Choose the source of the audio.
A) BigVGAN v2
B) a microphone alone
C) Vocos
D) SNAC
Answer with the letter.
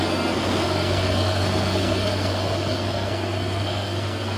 D